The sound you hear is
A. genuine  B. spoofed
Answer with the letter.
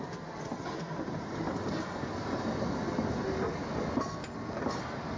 A